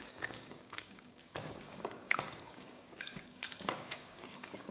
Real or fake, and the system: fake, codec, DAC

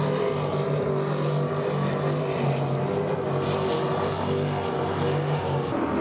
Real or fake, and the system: real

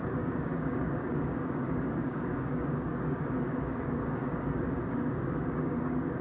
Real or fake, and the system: fake, codec, DAC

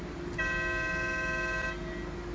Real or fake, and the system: real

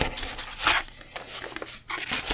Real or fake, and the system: real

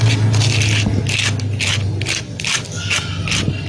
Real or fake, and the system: real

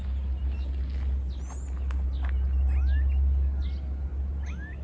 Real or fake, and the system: real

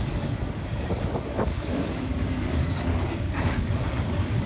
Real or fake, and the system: fake, codec, DAC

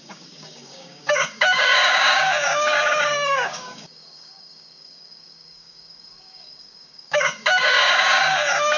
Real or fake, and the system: fake, codec, DAC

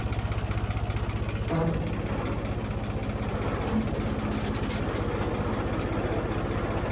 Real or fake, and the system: real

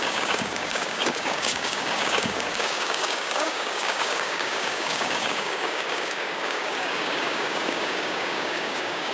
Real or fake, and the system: fake, codec, DAC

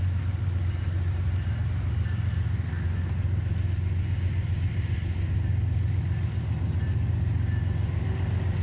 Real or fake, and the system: real